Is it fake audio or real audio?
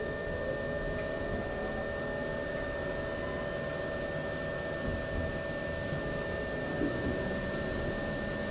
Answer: real